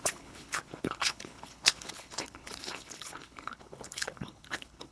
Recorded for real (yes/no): no